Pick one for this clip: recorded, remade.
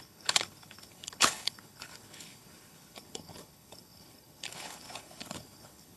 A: remade